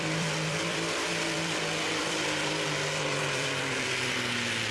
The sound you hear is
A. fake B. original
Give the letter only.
A